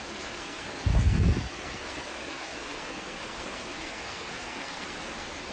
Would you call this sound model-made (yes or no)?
yes